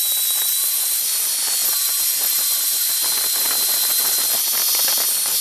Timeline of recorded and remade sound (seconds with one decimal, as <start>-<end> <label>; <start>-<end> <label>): 0.0-5.4 recorded